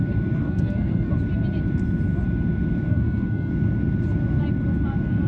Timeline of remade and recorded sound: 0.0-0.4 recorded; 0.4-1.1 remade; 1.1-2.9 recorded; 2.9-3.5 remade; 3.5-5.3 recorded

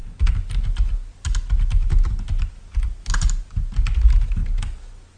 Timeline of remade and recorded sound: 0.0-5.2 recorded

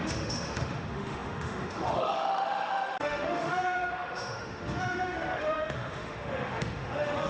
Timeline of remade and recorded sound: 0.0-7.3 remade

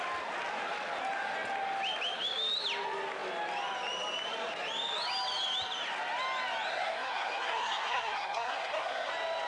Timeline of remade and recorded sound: 0.0-6.7 recorded; 6.7-9.1 remade; 9.1-9.5 recorded